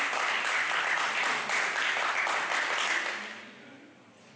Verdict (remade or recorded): recorded